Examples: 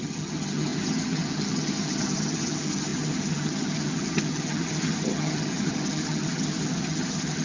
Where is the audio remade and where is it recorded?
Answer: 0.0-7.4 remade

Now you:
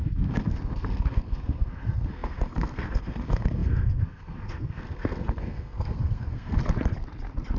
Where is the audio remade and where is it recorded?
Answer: 0.0-6.6 remade; 6.6-7.6 recorded